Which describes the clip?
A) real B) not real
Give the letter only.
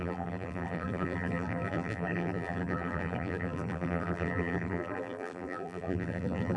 B